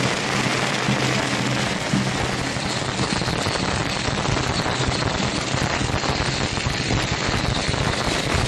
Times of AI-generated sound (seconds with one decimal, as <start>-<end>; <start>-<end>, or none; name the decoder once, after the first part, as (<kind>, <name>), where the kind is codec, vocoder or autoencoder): 0.0-0.5 (vocoder, BigVGAN v2); 3.1-3.8; 5.0-8.5